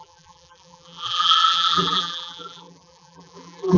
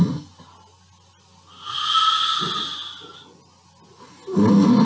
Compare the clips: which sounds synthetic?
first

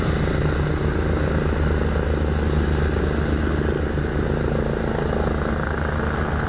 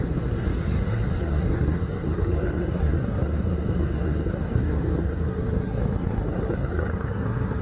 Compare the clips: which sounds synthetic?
second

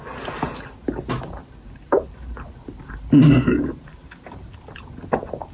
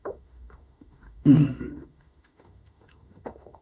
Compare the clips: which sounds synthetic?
second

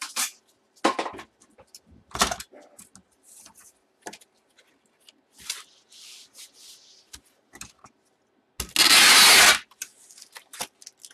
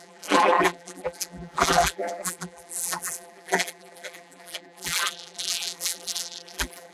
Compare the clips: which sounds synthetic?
second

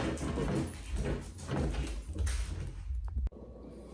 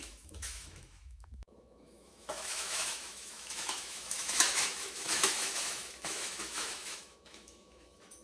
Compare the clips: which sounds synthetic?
second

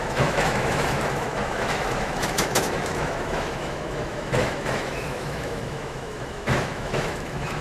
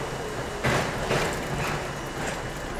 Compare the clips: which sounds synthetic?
first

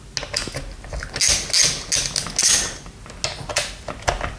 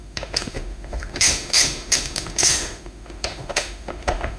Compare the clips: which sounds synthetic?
second